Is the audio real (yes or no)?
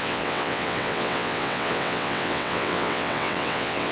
no